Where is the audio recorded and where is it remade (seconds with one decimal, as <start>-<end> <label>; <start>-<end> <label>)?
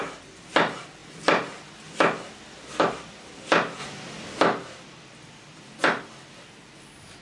0.0-1.0 recorded; 1.0-1.7 remade; 1.7-7.2 recorded